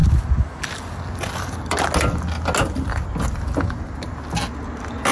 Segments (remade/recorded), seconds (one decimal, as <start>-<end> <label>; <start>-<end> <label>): 0.0-5.1 recorded

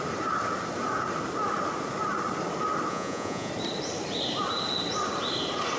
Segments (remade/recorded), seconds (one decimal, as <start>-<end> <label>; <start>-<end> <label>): 0.0-2.9 recorded; 2.9-3.5 remade; 3.5-5.8 recorded

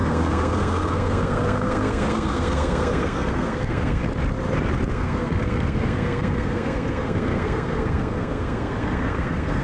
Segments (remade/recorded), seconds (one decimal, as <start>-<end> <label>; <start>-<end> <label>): 0.0-4.0 remade; 4.0-4.9 recorded; 4.9-9.6 remade

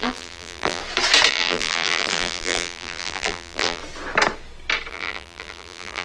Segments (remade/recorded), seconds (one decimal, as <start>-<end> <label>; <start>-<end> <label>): 0.0-0.8 remade; 0.8-1.3 recorded; 1.3-3.8 remade; 3.8-4.9 recorded; 4.9-6.0 remade